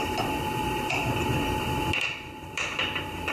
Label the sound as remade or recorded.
remade